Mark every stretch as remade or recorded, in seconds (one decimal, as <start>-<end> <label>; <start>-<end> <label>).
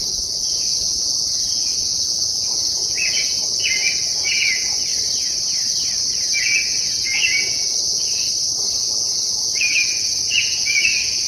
0.0-4.9 remade; 4.9-6.4 recorded; 6.4-8.3 remade; 8.3-8.8 recorded; 8.8-11.3 remade